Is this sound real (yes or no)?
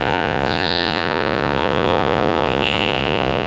no